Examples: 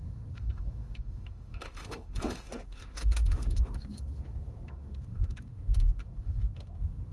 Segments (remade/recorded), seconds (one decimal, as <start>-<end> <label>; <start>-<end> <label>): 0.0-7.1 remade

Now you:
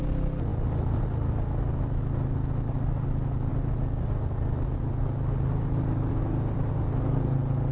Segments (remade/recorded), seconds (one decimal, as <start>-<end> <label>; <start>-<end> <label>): 0.0-7.7 recorded

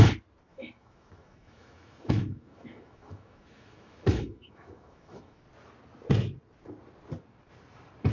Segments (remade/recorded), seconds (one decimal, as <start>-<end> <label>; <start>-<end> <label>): 0.0-0.5 recorded; 0.5-5.4 remade; 5.4-8.1 recorded